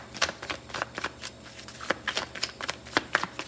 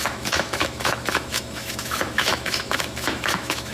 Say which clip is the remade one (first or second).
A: second